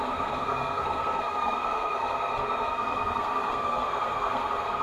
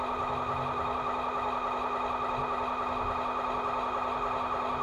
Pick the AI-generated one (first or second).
first